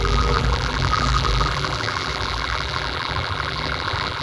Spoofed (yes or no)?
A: yes